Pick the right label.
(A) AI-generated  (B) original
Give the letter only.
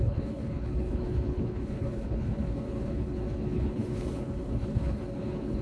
A